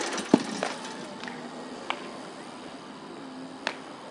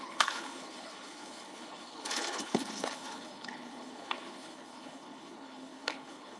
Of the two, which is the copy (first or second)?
second